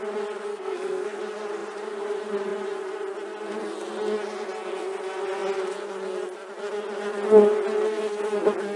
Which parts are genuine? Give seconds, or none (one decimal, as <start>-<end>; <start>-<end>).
0.0-0.5; 1.2-8.8